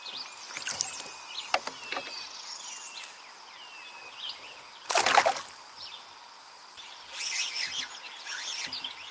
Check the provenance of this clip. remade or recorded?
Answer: recorded